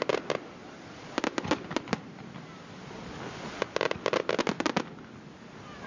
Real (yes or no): yes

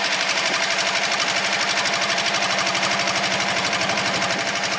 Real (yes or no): no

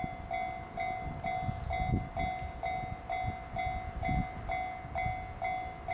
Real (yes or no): yes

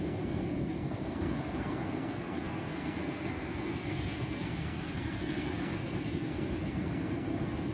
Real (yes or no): no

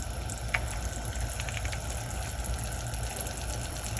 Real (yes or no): yes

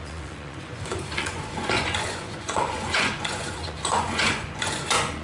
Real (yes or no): no